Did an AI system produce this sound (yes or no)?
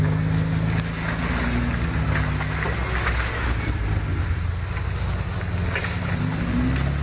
no